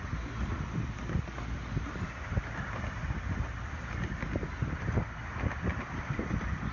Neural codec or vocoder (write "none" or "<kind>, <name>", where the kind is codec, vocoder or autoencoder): none